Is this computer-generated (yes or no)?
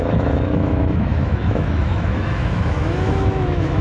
yes